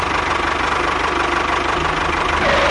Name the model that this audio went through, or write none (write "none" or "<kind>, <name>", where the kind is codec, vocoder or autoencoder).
none